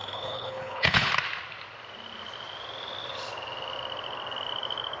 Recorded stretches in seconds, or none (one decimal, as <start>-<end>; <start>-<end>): 1.1-5.0